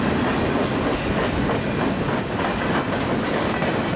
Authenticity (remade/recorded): recorded